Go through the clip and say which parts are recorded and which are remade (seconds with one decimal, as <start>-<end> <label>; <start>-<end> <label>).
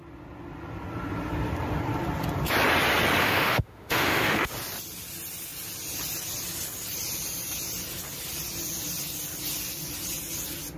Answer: 0.0-3.2 recorded; 3.2-4.5 remade; 4.5-10.8 recorded